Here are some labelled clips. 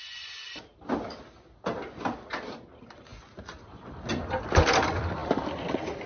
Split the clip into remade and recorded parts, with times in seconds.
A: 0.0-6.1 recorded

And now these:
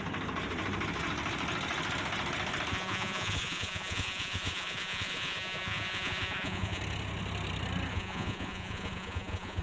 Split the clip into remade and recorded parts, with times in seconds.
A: 0.0-2.7 recorded; 2.7-6.8 remade; 6.8-7.9 recorded; 7.9-9.6 remade